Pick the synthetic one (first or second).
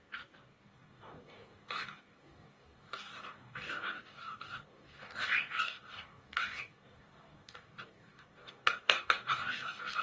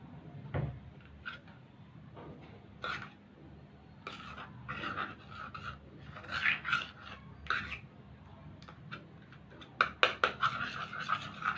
first